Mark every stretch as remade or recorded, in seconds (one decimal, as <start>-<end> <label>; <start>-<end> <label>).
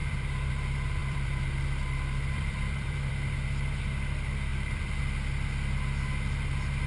0.0-0.5 remade; 0.5-1.0 recorded; 1.0-3.1 remade; 3.1-4.5 recorded; 4.5-5.0 remade; 5.0-6.9 recorded